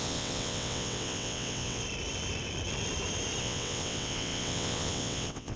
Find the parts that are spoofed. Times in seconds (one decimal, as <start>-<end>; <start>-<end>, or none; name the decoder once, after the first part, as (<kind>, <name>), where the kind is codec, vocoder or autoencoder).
0.0-1.8 (vocoder, WaveNeXt); 3.4-5.6